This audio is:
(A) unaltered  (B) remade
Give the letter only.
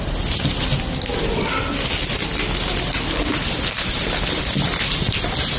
A